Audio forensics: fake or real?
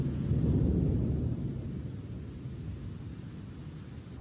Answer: real